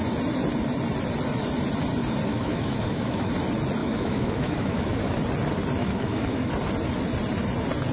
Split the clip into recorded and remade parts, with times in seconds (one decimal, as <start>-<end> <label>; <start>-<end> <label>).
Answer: 0.0-2.3 recorded; 2.3-3.3 remade; 3.3-3.8 recorded; 3.8-5.2 remade; 5.2-5.8 recorded; 5.8-6.5 remade; 6.5-7.9 recorded